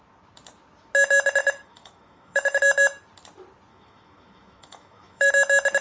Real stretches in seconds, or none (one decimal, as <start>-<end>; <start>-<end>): 0.0-1.4; 2.6-3.7; 5.3-5.8